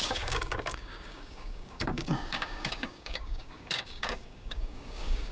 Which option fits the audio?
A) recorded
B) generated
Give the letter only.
B